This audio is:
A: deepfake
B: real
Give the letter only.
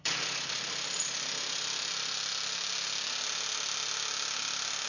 B